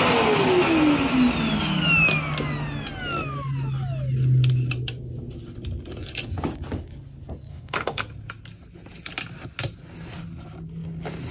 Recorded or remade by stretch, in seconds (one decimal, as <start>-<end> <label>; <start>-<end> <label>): 0.0-7.5 recorded; 7.5-8.0 remade; 8.0-11.3 recorded